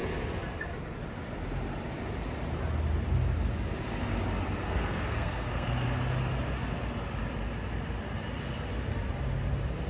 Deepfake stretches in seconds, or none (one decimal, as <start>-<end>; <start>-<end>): 4.6-5.7